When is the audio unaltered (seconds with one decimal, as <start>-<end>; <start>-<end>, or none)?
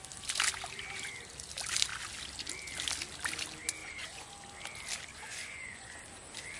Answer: 0.0-3.8; 4.3-5.1; 5.9-6.6